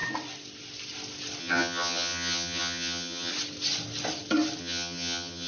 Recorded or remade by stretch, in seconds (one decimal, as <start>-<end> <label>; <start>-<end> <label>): 0.0-1.4 recorded; 1.4-3.3 remade; 3.3-4.6 recorded; 4.6-5.5 remade